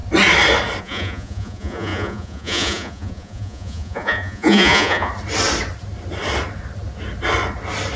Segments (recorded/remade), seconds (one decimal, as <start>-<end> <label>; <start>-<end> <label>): 0.0-0.8 recorded; 0.8-5.1 remade; 5.1-8.0 recorded